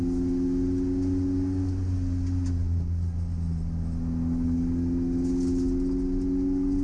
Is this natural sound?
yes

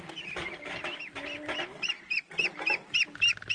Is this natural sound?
yes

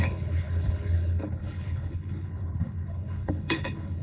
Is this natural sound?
no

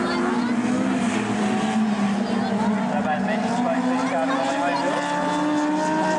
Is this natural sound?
yes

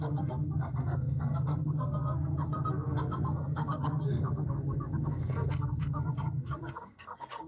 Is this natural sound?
no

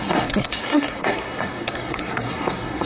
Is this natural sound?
no